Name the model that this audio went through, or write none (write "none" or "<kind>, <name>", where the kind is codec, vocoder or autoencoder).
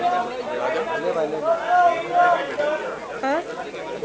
none